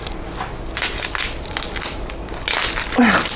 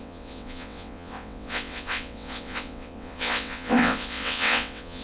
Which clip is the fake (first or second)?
second